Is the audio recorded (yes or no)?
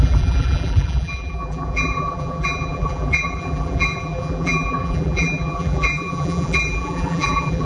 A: no